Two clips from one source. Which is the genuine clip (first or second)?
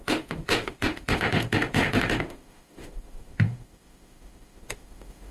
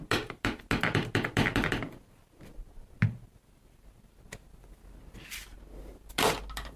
second